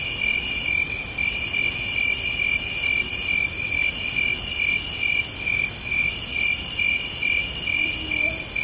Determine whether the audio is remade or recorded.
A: recorded